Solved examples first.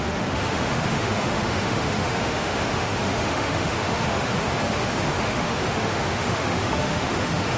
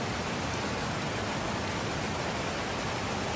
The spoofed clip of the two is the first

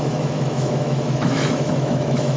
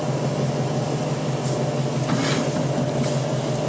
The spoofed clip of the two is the first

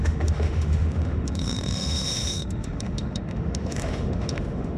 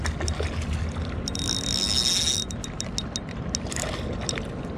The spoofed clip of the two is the first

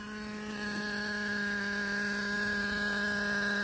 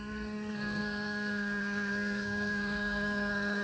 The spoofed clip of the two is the second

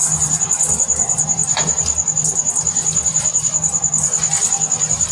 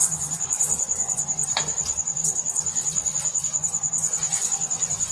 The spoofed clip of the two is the second